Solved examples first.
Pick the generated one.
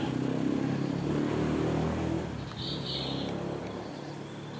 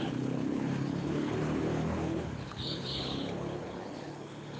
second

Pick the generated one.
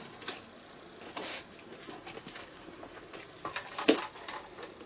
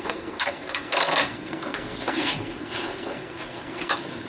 second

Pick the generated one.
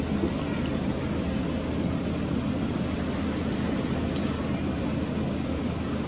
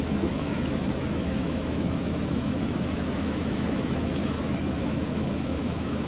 second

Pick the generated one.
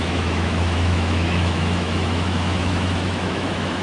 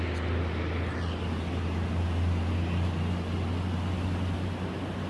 first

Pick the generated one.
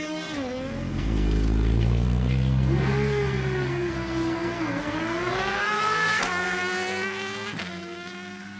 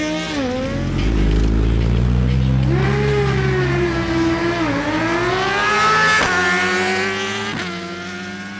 first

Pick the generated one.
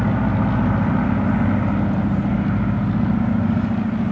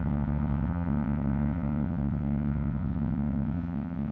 second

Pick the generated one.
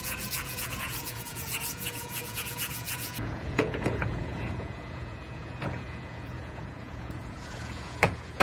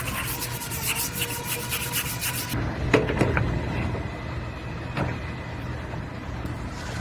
first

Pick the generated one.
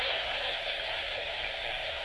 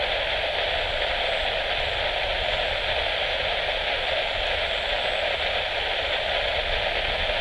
first